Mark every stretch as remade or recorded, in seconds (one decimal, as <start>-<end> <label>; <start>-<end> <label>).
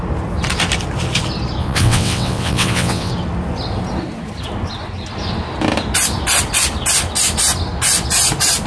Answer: 0.0-1.6 recorded; 1.6-3.1 remade; 3.1-8.7 recorded